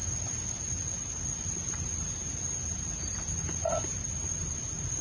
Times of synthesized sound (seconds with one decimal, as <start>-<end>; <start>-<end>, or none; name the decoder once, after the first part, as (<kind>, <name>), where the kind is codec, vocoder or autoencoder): none